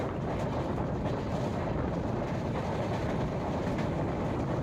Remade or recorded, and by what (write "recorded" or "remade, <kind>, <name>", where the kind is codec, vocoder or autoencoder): recorded